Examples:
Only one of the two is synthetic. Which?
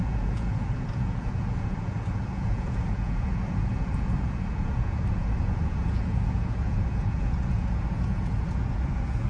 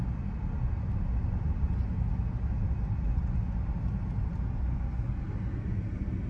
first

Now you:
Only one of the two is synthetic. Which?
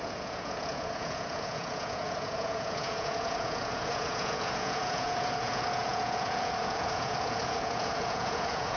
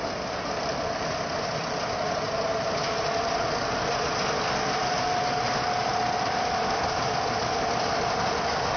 first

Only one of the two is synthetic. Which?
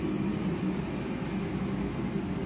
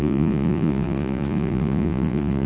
second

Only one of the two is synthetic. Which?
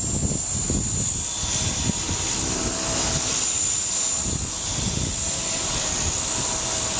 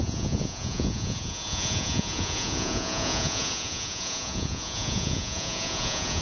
second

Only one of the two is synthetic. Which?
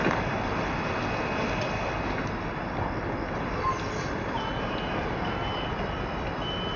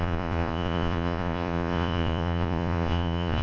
second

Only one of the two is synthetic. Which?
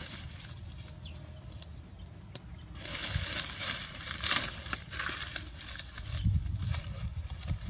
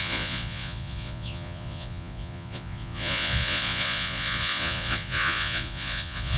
second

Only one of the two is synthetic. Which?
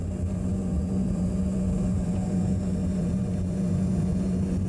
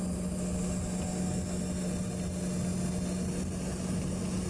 first